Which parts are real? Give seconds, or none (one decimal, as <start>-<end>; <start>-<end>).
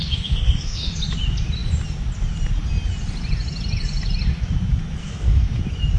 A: 1.0-5.0; 5.6-6.0